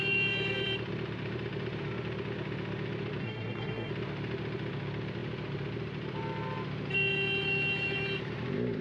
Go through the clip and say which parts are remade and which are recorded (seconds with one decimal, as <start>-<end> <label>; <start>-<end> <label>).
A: 0.0-3.2 recorded; 3.2-3.9 remade; 3.9-8.8 recorded